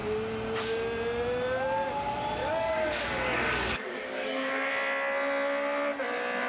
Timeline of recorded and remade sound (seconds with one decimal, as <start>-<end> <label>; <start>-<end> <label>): 0.0-2.4 recorded; 2.4-4.7 remade; 4.7-6.5 recorded